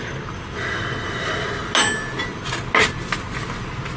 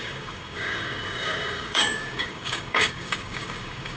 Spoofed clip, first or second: second